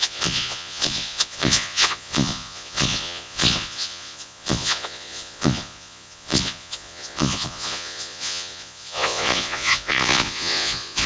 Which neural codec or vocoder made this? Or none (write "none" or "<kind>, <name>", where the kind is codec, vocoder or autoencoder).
vocoder, Vocos